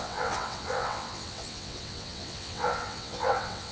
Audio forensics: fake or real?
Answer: fake